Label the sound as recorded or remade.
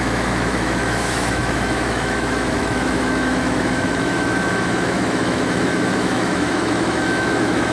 remade